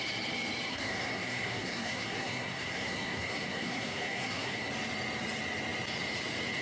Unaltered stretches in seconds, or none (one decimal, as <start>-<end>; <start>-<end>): 0.0-0.7; 4.7-6.6